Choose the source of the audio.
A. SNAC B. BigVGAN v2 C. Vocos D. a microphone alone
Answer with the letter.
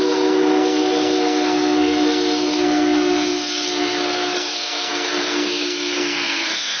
A